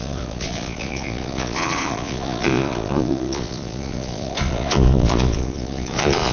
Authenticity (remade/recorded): remade